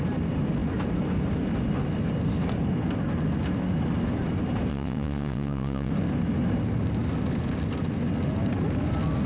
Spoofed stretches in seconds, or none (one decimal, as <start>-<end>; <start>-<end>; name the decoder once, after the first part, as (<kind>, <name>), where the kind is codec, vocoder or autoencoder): 4.7-5.9 (vocoder, WaveNeXt)